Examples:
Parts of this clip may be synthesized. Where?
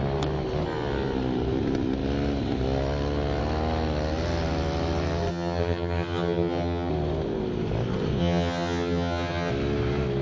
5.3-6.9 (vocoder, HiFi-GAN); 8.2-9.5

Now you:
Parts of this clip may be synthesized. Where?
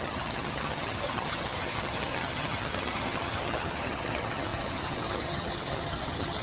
0.0-6.4 (vocoder, HiFi-GAN)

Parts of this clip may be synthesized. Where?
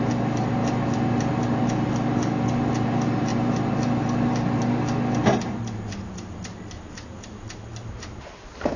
none